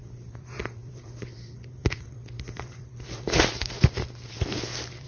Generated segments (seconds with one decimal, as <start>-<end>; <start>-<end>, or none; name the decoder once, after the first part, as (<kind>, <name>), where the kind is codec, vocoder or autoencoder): 0.0-5.1 (vocoder, BigVGAN v2)